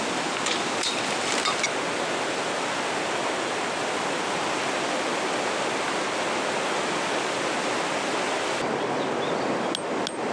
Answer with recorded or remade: recorded